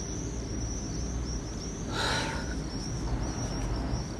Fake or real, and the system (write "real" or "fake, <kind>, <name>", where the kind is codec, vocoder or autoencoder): real